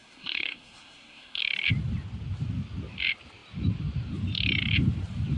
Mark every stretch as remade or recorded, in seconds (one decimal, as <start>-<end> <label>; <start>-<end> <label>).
0.0-1.4 remade; 1.4-5.4 recorded

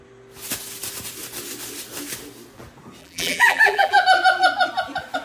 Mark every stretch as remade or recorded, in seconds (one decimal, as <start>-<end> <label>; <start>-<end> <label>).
0.0-3.0 recorded; 3.0-4.0 remade; 4.0-5.2 recorded

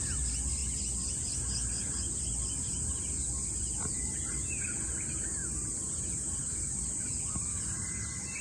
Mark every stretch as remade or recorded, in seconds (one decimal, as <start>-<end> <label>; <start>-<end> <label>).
0.0-2.7 recorded; 2.7-3.8 remade; 3.8-5.4 recorded; 5.4-6.7 remade; 6.7-8.4 recorded